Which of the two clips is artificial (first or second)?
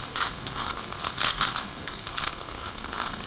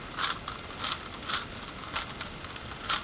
first